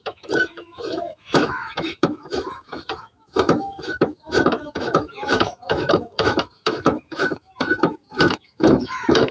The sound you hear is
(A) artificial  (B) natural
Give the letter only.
A